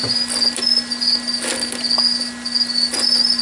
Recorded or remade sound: recorded